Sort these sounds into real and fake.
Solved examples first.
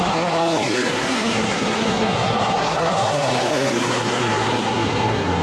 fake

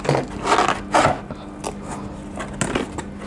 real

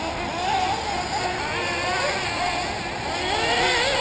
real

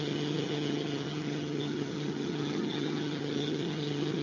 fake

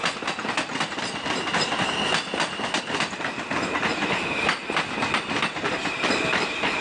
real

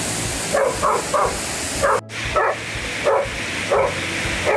real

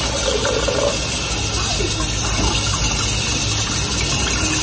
real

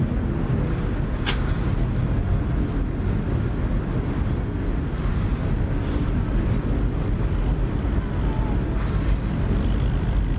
real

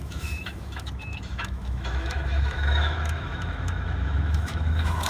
fake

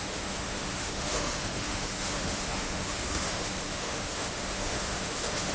fake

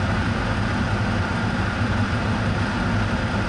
real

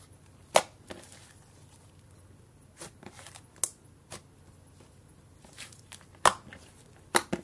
real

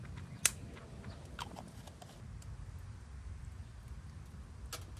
real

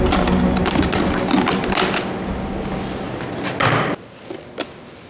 real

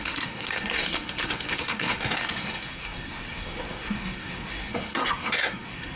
fake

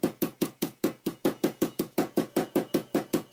fake